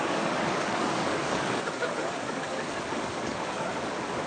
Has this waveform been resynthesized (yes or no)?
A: yes